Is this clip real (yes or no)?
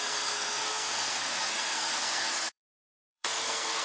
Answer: no